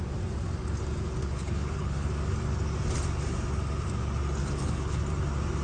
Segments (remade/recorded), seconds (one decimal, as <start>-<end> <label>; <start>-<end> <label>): 0.0-1.2 recorded; 1.2-2.1 remade; 2.1-4.4 recorded; 4.4-5.0 remade; 5.0-5.6 recorded